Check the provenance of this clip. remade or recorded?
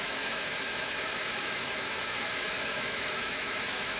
remade